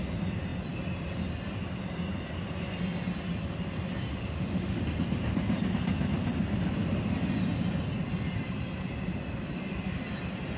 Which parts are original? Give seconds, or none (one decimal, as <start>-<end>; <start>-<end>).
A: 0.0-4.1; 4.8-10.6